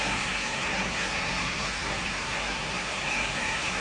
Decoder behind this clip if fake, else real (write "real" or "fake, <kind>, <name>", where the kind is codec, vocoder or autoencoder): fake, codec, SNAC